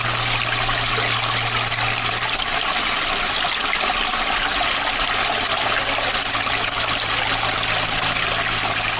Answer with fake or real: real